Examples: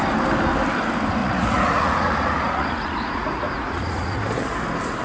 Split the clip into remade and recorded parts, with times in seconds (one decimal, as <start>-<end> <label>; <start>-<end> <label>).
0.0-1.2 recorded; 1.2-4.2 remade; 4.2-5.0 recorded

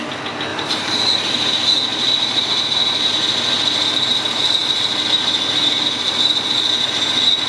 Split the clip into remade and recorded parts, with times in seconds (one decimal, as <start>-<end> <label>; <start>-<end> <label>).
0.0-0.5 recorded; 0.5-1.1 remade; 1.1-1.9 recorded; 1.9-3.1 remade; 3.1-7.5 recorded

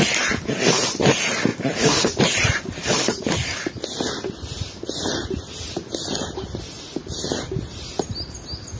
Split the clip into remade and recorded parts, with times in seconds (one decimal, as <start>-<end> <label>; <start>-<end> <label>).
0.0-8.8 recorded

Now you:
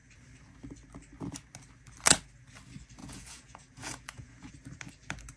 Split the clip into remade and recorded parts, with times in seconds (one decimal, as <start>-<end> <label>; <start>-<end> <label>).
0.0-3.0 recorded; 3.0-4.5 remade; 4.5-5.4 recorded

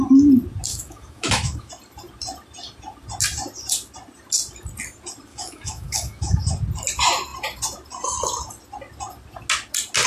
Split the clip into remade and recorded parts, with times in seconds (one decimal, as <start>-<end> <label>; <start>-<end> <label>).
0.0-0.7 recorded; 0.7-1.7 remade; 1.7-5.3 recorded; 5.3-6.4 remade; 6.4-10.1 recorded